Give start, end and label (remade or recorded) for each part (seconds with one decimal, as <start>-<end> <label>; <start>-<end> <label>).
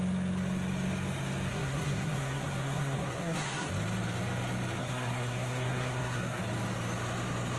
0.0-1.5 recorded; 1.5-3.7 remade; 3.7-4.8 recorded; 4.8-6.4 remade; 6.4-7.6 recorded